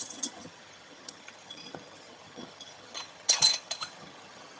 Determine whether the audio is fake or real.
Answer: fake